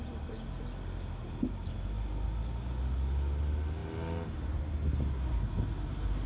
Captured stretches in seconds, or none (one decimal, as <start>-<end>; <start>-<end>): 0.0-6.3